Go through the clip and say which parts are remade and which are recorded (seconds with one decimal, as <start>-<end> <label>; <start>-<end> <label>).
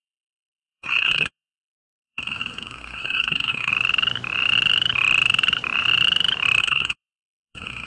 0.0-3.7 remade; 3.7-6.6 recorded; 6.6-7.9 remade